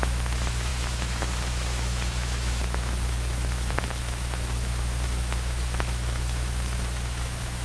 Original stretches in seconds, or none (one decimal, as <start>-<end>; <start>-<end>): none